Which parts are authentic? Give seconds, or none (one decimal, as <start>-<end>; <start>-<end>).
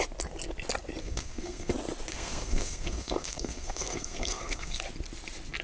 0.0-1.0; 1.7-2.1; 4.8-5.6